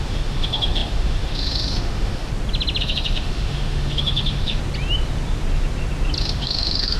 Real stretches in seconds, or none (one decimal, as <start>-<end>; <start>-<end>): 2.3-2.8; 4.6-6.2